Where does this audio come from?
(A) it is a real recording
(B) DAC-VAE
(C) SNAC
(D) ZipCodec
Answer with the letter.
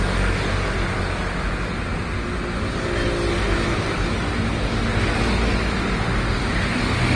A